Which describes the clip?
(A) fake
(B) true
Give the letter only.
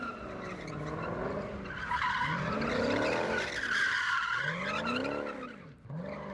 B